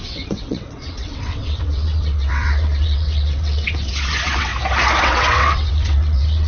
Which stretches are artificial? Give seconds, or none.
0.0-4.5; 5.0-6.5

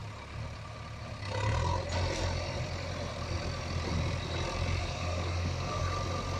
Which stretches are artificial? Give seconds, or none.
4.8-5.8

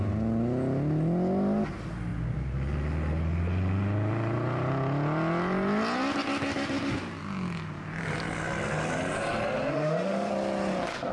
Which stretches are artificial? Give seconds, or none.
9.7-10.3

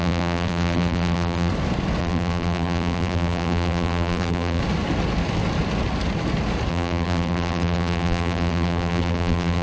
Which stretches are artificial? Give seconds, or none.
0.0-1.5; 2.0-4.6; 6.7-9.6

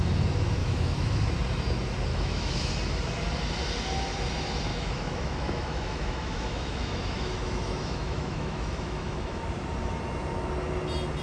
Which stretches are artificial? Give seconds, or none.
0.6-1.3; 2.1-2.7; 4.7-9.4

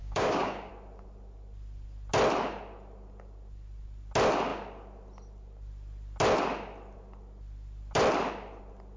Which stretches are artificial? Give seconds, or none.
0.0-0.7